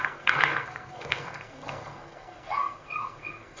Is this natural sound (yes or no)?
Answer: no